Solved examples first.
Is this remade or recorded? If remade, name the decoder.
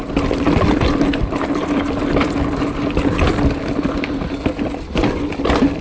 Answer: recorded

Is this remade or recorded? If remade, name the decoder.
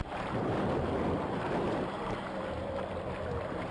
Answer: remade, vocoder, BigVGAN v2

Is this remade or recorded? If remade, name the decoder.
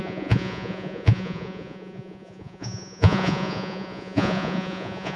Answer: remade, vocoder, Vocos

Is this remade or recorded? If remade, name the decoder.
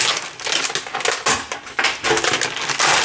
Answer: recorded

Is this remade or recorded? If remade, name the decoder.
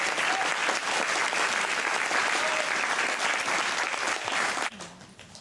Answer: recorded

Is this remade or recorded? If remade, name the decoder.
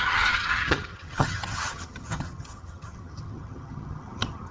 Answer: remade, vocoder, HiFi-GAN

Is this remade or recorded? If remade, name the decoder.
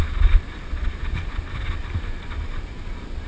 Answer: recorded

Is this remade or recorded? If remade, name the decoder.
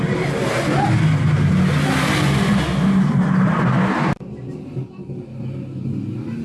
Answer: recorded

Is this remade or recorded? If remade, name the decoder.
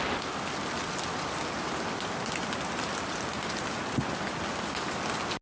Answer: recorded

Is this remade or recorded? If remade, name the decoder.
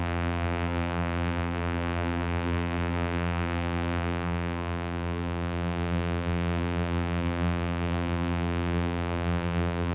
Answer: remade, vocoder, BigVGAN v2